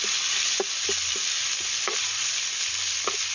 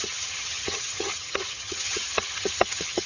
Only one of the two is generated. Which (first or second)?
second